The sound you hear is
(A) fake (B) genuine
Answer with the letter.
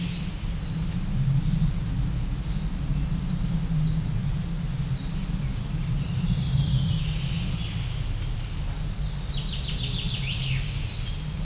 B